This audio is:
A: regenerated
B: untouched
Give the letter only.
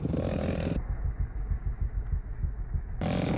B